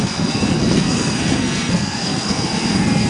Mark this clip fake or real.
fake